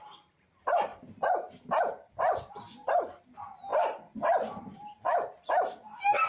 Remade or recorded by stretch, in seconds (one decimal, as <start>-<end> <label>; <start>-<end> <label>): 0.0-6.3 recorded